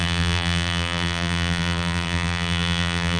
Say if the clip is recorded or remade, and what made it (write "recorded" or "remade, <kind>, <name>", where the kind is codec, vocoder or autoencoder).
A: remade, vocoder, BigVGAN v2